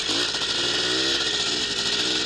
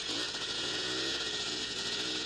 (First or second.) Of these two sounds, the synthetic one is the second